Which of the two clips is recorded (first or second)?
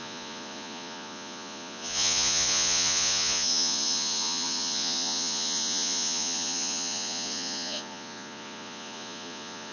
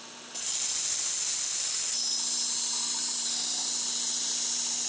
second